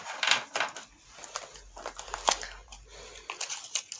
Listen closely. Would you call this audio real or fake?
real